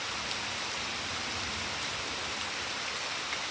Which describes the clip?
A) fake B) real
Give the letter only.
B